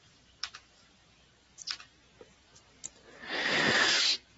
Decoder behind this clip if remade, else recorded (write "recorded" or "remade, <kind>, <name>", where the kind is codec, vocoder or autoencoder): recorded